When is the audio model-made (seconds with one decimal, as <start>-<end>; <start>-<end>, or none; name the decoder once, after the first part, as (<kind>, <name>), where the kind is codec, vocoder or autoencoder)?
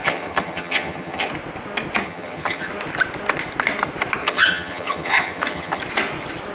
0.0-1.3 (vocoder, HiFi-GAN); 2.0-2.7; 4.2-5.8